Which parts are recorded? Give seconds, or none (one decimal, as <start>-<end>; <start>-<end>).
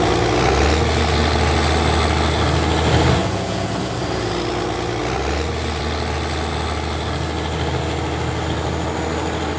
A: 0.0-3.2; 4.3-9.6